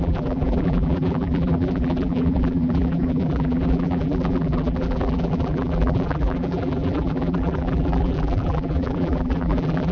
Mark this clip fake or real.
fake